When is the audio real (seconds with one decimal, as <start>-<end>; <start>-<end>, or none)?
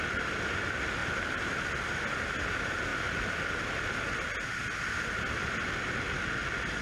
0.0-6.8